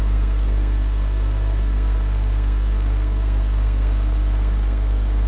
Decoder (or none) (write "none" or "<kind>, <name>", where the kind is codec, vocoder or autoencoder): codec, SNAC